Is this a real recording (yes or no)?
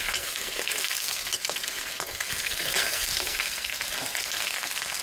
no